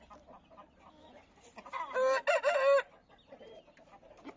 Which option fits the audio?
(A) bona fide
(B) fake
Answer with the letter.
A